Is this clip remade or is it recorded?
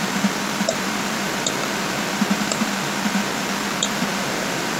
remade